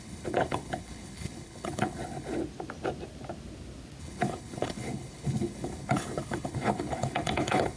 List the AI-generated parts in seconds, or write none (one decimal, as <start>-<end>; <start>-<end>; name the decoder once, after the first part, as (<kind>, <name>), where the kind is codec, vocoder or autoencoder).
0.0-2.4 (codec, HILCodec); 4.0-7.8